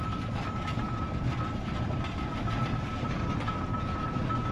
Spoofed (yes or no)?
no